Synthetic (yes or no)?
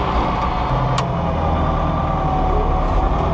no